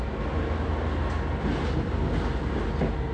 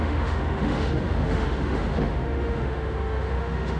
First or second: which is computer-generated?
second